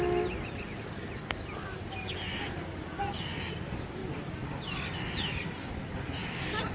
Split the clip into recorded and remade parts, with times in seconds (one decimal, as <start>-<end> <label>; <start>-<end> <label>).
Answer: 0.0-6.7 recorded